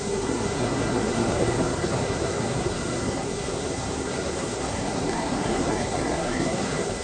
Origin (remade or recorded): remade